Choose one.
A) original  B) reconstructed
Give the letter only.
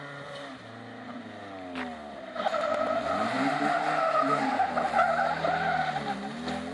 A